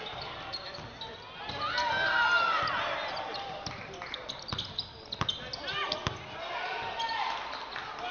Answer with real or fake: real